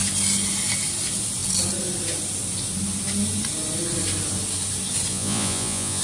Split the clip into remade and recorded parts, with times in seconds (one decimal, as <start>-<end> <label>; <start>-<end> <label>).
0.0-5.1 recorded; 5.1-6.0 remade